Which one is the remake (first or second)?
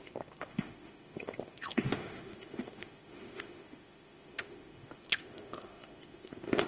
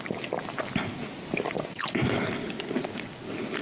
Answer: first